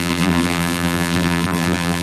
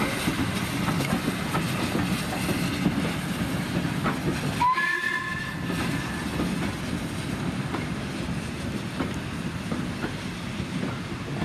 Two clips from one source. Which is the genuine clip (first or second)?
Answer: second